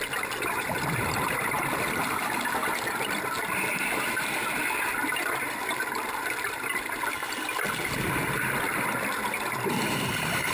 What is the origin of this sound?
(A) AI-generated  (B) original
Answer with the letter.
A